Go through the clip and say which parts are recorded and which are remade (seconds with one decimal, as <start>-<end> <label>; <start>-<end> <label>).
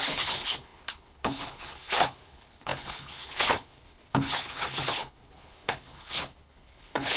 0.0-7.2 remade